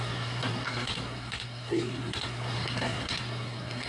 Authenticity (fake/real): fake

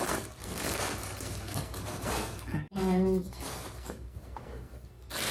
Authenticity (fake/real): fake